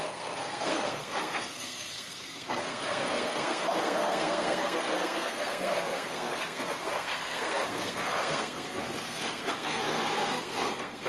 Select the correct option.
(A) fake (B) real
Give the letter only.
A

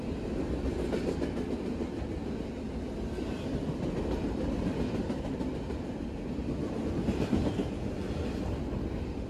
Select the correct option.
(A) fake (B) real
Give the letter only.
B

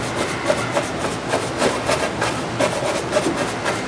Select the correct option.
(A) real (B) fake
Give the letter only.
A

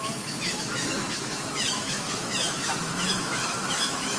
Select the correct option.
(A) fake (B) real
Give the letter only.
A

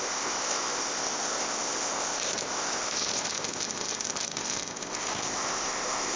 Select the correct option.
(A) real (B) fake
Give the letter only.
B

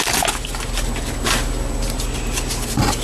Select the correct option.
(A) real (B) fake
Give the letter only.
A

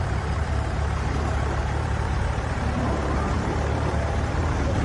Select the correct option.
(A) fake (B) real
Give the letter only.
A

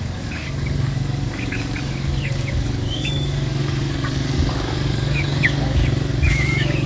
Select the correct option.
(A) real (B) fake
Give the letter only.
B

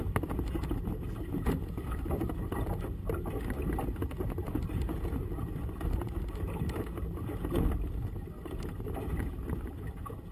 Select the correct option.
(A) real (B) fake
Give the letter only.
A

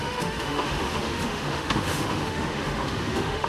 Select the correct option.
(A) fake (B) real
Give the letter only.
A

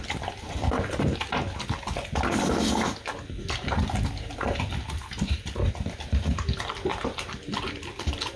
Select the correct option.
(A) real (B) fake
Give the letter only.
A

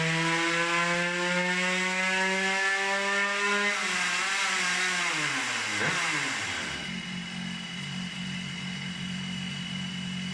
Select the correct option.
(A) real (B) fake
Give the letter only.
A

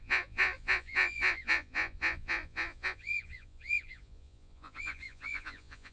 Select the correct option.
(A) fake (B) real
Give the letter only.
A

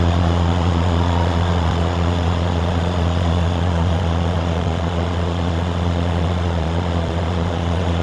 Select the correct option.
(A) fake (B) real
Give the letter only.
A